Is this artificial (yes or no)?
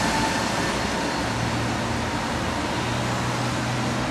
no